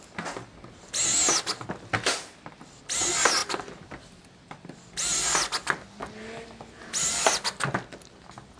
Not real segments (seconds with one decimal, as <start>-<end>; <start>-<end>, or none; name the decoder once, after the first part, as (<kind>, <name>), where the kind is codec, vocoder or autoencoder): none